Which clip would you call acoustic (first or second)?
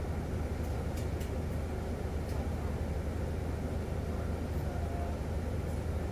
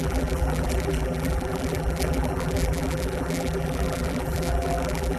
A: first